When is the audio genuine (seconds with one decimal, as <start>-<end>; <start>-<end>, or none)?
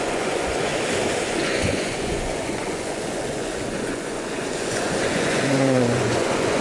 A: 0.7-1.3